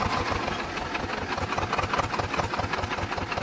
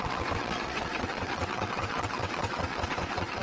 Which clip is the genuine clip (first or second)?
first